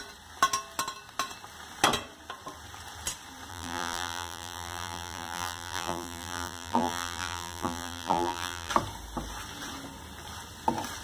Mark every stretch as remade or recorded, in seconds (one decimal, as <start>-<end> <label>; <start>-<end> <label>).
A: 0.0-3.5 recorded; 3.5-8.7 remade; 8.7-11.0 recorded